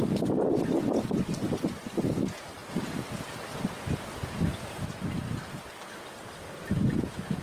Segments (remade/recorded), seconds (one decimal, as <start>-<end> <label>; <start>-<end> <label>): 0.0-7.4 recorded